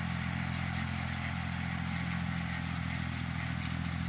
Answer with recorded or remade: recorded